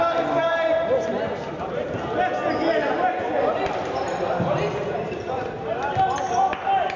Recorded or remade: recorded